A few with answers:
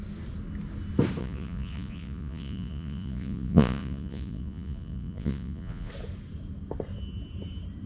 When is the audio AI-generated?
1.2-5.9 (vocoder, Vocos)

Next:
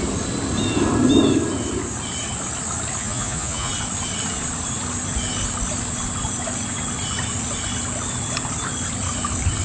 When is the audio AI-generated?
3.0-3.7 (vocoder, Vocos)